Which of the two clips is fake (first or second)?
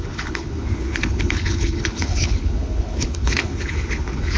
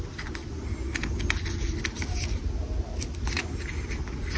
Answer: first